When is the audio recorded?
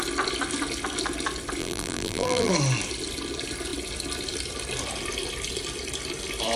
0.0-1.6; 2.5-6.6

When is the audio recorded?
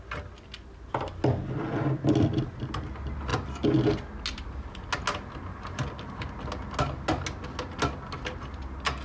0.0-9.0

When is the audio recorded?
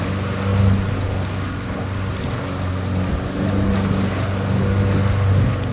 0.0-5.7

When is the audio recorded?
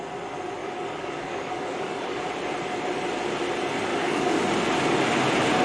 0.0-0.6; 2.2-3.9; 4.4-5.6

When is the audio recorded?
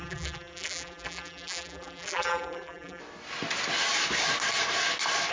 3.0-5.3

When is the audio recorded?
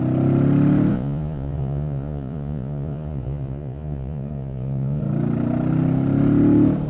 0.0-0.9; 5.0-6.9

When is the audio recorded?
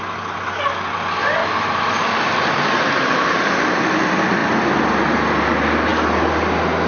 0.0-1.4; 3.8-6.9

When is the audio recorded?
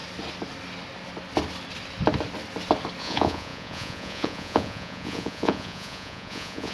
0.0-3.0